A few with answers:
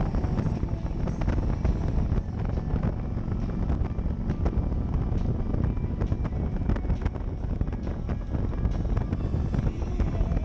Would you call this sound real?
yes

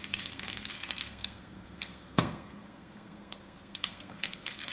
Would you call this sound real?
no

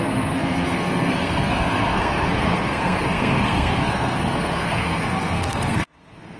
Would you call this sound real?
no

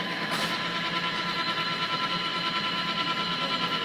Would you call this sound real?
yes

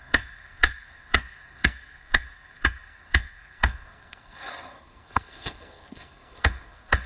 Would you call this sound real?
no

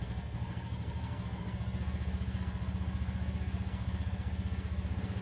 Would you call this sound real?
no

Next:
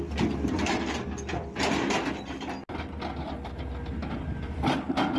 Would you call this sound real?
yes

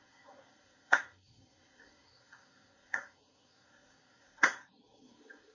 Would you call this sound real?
no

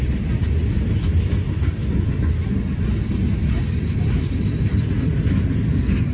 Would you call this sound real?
yes